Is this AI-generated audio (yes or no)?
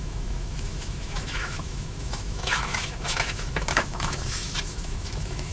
yes